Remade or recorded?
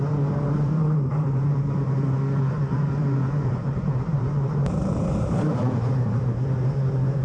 remade